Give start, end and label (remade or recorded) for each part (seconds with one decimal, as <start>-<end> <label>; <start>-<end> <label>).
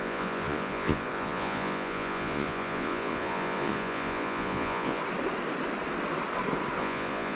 0.0-5.0 remade; 5.0-6.8 recorded; 6.8-7.4 remade